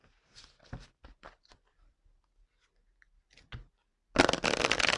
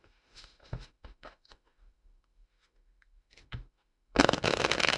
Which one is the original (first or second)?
first